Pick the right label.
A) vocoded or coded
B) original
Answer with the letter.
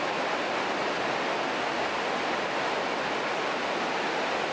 B